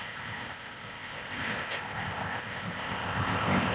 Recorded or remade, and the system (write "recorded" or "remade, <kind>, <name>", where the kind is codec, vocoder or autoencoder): remade, codec, ZipCodec